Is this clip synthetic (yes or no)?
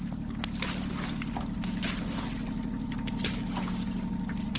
no